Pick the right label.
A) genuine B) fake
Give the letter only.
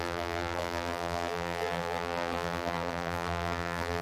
B